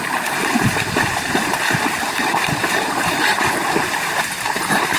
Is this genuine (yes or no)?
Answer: no